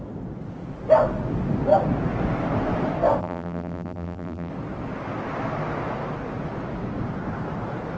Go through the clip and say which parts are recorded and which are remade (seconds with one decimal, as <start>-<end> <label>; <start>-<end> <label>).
0.0-3.2 recorded; 3.2-4.5 remade; 4.5-8.0 recorded